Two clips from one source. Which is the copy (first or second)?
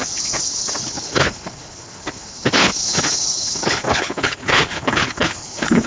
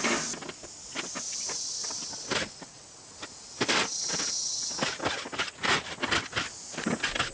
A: first